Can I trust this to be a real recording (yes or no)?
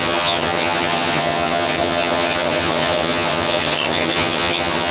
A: no